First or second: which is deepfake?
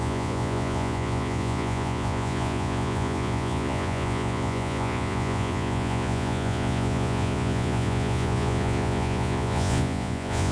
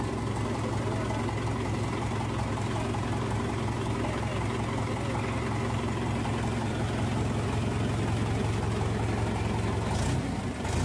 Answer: first